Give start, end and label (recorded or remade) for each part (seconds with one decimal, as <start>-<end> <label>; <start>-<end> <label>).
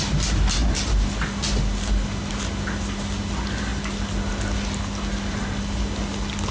0.0-6.5 recorded